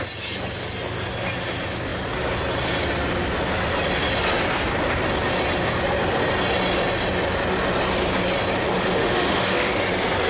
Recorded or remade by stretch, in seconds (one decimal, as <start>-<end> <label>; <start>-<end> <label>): 0.0-9.0 recorded; 9.0-9.8 remade; 9.8-10.3 recorded